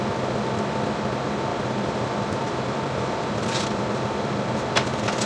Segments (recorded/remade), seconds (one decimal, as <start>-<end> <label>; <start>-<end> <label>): 0.0-1.5 recorded; 1.5-4.7 remade; 4.7-5.3 recorded